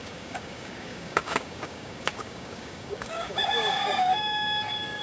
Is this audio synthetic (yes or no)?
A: yes